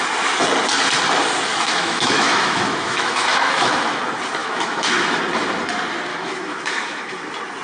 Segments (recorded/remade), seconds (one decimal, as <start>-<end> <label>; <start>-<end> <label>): 0.0-1.5 recorded; 1.5-4.0 remade; 4.0-4.4 recorded; 4.4-5.2 remade; 5.2-6.1 recorded; 6.1-7.1 remade; 7.1-7.6 recorded